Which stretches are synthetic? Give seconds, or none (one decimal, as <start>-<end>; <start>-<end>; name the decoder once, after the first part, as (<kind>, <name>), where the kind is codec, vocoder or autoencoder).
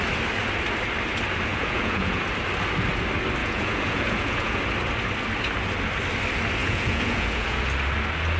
1.5-2.2 (vocoder, Vocos); 3.4-4.6; 6.6-7.6